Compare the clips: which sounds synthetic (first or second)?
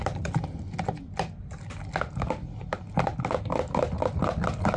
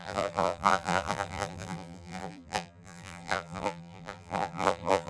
second